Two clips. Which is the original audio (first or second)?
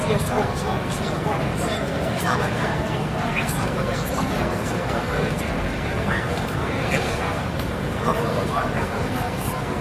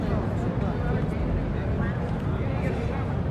second